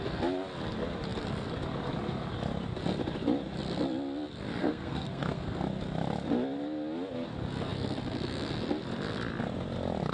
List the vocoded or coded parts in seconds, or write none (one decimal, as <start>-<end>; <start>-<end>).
4.6-5.6